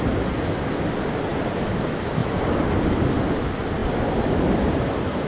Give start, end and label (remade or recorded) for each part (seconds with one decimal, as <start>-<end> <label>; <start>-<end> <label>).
0.0-1.3 recorded; 1.3-1.8 remade; 1.8-2.2 recorded; 2.2-3.0 remade; 3.0-5.3 recorded